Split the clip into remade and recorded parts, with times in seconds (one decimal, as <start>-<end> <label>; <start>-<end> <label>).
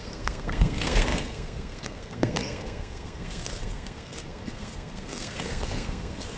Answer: 0.0-6.4 remade